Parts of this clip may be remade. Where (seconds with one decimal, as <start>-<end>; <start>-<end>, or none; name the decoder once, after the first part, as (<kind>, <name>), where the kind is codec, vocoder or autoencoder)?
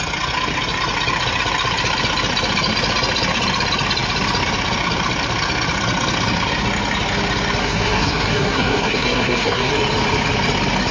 7.6-9.7 (codec, SNAC)